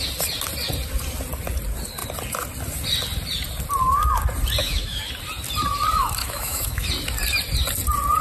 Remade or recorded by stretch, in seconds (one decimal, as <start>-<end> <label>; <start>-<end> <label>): 0.0-4.6 recorded; 4.6-5.1 remade; 5.1-6.2 recorded; 6.2-6.9 remade; 6.9-8.2 recorded